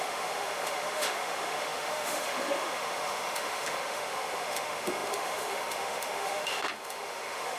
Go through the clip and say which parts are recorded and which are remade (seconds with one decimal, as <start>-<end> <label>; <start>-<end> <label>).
0.0-7.6 remade